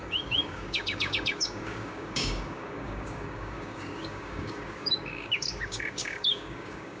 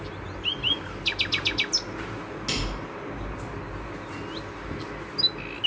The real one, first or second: second